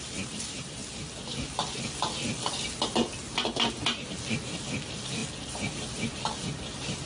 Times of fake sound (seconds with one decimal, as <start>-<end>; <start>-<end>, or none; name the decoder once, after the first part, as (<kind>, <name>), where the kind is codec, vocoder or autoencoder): 0.0-0.8 (vocoder, BigVGAN v2); 4.6-5.2; 5.8-7.1